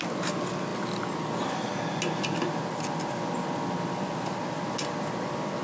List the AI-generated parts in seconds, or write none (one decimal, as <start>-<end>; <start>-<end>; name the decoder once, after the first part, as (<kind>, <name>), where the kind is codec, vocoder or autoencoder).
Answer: none